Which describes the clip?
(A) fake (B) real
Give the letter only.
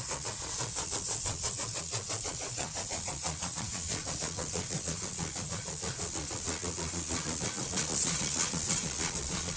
A